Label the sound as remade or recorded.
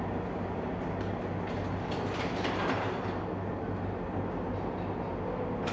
recorded